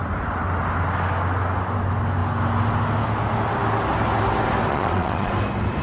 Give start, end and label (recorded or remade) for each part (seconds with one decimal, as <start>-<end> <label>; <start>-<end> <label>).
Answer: 0.0-4.7 recorded; 4.7-5.3 remade; 5.3-5.8 recorded